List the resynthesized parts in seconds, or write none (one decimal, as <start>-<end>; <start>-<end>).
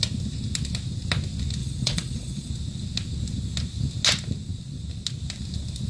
1.6-2.5